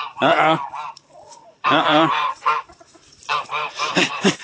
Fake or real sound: fake